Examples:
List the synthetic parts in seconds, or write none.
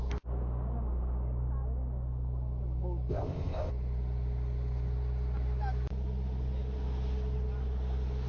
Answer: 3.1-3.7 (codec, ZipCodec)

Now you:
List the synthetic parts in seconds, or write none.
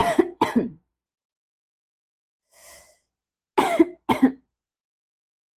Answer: 0.0-3.1 (vocoder, Vocos)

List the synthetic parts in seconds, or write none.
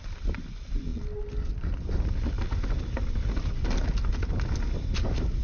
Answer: none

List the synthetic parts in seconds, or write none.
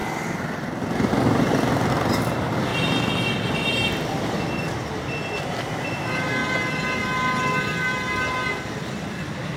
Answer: none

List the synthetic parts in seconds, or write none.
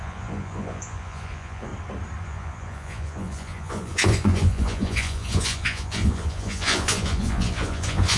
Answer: 0.0-1.7 (vocoder, Vocos); 2.2-8.2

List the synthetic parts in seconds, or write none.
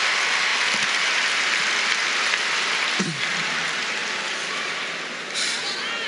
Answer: none